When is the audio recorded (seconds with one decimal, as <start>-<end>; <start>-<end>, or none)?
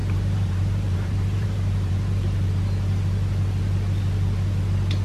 2.5-5.0